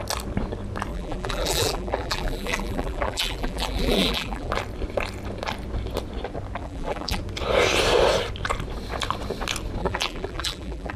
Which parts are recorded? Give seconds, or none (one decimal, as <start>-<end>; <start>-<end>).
0.0-0.9; 4.5-6.6; 7.2-9.8